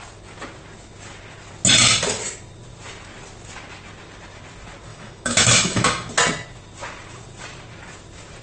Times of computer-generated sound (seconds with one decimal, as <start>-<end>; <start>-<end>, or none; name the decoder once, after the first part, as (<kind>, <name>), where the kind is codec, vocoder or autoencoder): 4.9-6.1 (autoencoder, DAC-VAE)